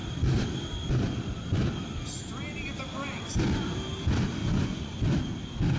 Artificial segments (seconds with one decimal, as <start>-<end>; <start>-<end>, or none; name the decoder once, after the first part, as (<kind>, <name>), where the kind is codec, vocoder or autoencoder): 4.4-5.0 (vocoder, Vocos)